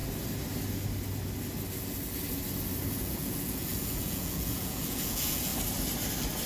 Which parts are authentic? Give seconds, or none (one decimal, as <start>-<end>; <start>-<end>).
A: 0.0-2.9; 5.5-6.5